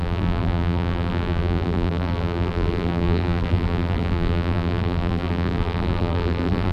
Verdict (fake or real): fake